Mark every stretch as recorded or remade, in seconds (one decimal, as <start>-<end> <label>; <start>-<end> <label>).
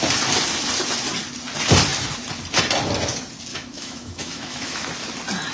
0.0-3.5 recorded; 3.5-4.9 remade; 4.9-5.5 recorded